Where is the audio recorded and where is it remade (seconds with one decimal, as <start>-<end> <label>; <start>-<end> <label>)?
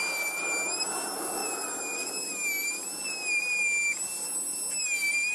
0.0-5.3 recorded